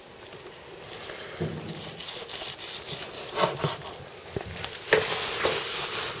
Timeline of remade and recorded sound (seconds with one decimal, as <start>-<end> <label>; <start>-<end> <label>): 0.0-6.2 recorded